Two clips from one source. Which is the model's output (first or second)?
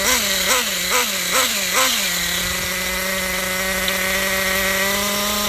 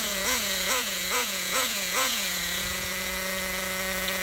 second